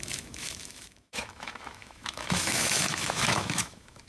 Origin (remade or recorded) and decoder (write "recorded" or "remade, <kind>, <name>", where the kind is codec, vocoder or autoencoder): remade, autoencoder, DAC-VAE